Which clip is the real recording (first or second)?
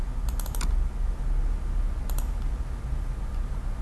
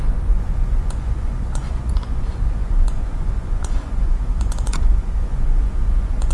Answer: first